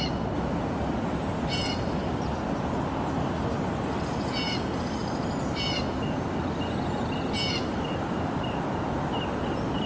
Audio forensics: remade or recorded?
recorded